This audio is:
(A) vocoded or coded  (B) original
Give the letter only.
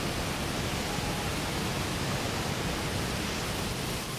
B